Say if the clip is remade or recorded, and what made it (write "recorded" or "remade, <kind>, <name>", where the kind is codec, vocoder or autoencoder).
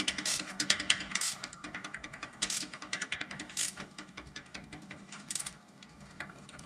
remade, codec, DAC